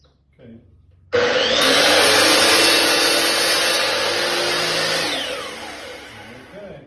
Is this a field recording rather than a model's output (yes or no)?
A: yes